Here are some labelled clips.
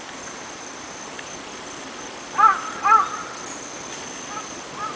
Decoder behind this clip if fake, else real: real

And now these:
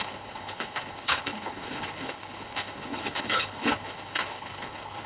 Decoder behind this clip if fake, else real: fake, codec, HILCodec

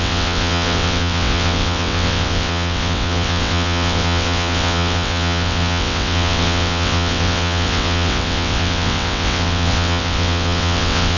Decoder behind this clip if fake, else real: fake, vocoder, WaveNeXt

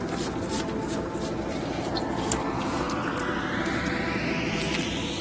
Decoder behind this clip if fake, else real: real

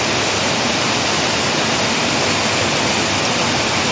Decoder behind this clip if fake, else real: real